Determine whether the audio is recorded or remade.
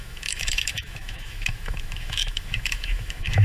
remade